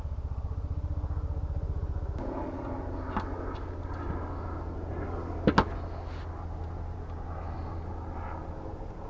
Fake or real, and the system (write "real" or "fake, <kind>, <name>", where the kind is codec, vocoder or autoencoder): real